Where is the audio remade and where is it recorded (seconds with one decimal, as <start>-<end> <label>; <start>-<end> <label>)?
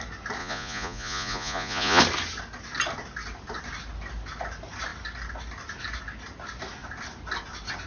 0.0-0.4 recorded; 0.4-2.0 remade; 2.0-7.9 recorded